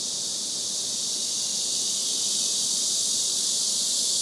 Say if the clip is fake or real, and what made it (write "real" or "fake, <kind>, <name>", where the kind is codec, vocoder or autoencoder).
real